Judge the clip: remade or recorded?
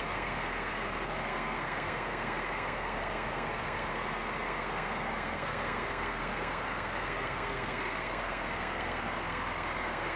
remade